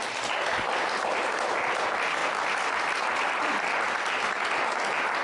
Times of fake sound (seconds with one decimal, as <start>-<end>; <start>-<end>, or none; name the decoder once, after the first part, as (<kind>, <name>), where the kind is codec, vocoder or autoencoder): none